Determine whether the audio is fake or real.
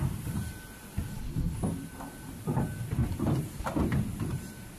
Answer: real